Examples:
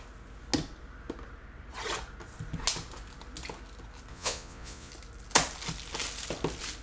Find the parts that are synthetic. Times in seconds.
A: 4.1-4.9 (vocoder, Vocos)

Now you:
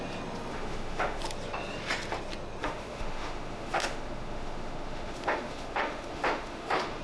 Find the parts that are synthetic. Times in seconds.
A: 0.5-1.2 (autoencoder, DAC-VAE); 2.6-7.0